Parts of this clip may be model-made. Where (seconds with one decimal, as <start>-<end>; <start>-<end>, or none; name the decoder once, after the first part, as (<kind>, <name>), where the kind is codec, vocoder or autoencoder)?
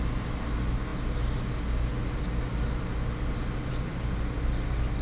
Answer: none